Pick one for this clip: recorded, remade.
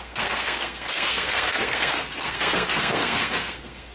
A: remade